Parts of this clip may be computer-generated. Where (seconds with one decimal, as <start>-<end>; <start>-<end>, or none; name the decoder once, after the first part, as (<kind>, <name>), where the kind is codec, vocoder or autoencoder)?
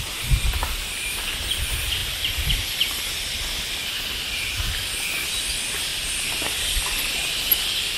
2.0-3.1 (vocoder, BigVGAN v2); 5.9-6.8